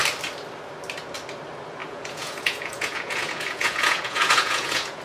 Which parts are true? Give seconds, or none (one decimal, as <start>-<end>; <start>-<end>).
0.0-1.8